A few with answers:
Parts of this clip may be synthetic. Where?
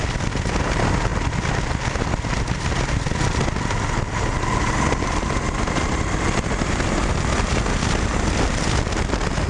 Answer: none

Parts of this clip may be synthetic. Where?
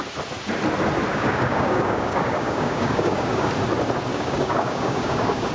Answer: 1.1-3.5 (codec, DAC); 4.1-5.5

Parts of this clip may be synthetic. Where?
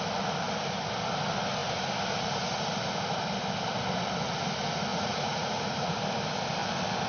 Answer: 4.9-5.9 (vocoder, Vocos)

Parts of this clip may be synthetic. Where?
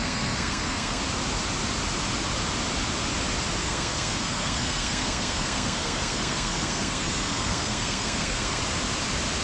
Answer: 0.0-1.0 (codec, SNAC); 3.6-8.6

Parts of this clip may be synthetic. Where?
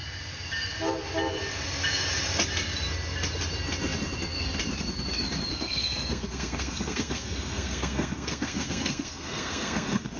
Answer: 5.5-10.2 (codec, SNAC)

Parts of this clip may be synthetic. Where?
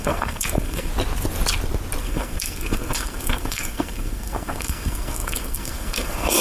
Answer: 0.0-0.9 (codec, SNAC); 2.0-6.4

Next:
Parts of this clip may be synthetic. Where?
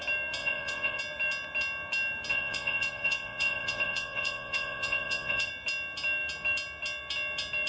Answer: 0.4-1.0 (vocoder, Vocos); 2.3-5.5